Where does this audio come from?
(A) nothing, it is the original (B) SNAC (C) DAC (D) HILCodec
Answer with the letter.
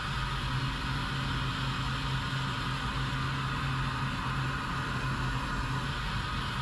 A